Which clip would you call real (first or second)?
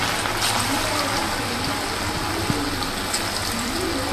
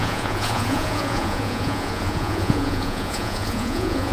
first